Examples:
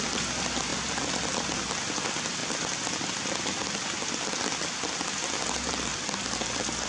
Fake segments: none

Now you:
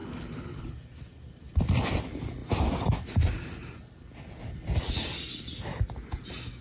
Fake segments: 0.0-0.6

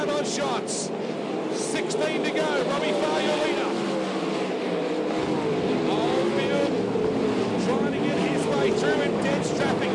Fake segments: none